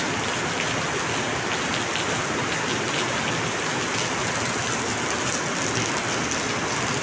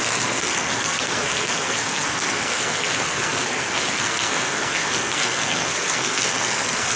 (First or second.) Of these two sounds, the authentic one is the first